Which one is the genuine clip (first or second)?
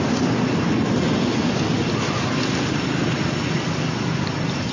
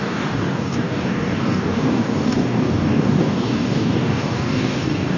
first